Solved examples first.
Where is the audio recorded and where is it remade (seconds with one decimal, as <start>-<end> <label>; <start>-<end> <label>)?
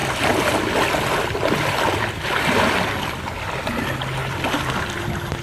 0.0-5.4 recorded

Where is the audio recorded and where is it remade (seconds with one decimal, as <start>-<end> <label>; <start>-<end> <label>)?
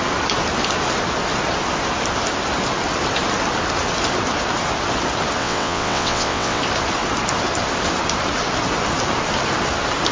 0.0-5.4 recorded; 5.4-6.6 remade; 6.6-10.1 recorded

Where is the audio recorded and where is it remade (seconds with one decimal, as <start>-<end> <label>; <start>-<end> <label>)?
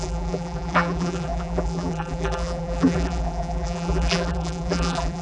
0.0-5.2 remade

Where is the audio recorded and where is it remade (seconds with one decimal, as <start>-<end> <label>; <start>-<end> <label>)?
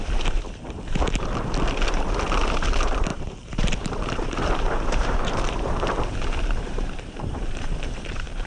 0.0-3.1 recorded; 3.1-8.5 remade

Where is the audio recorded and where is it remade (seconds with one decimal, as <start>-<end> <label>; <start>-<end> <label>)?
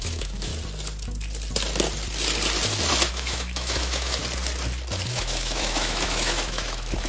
0.0-0.5 remade; 0.5-3.1 recorded; 3.1-4.2 remade; 4.2-5.1 recorded; 5.1-7.1 remade